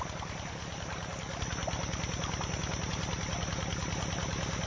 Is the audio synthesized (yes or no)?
no